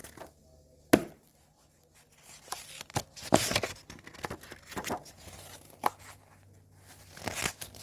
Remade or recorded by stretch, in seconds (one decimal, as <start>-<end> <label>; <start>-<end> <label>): 0.0-7.8 recorded